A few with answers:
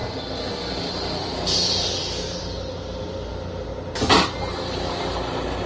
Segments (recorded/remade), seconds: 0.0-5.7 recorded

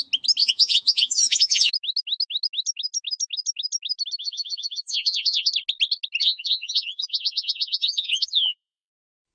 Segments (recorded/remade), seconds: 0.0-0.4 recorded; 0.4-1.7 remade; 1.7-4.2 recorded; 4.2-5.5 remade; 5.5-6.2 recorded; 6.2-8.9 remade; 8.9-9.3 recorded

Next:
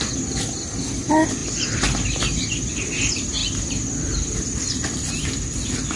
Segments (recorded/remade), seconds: 0.0-6.0 recorded